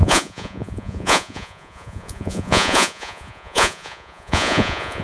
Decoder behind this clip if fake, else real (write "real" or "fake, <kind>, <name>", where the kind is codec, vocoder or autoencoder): fake, vocoder, Vocos